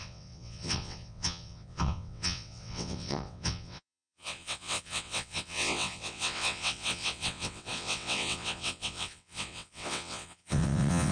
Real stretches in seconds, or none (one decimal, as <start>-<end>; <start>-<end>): none